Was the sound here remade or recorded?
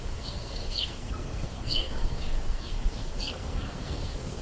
remade